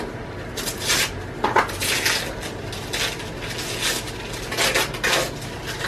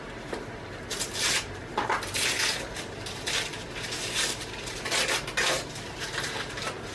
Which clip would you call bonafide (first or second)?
first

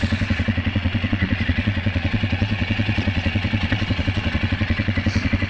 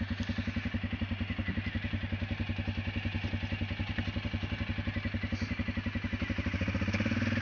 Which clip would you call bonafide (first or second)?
second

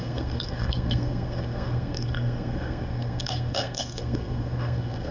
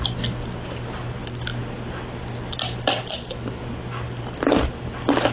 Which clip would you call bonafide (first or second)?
second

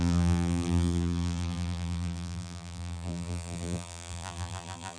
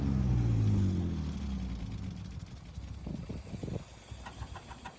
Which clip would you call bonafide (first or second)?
second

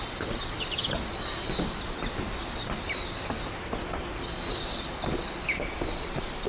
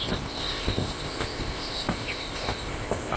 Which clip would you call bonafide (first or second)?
first